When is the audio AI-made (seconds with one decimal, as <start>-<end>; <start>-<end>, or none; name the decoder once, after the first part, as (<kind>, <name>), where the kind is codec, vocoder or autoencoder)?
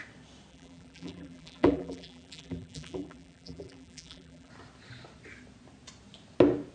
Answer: 0.5-4.5 (vocoder, BigVGAN v2)